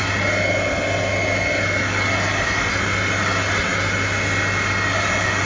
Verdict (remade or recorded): recorded